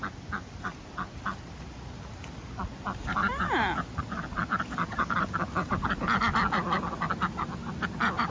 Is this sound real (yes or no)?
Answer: yes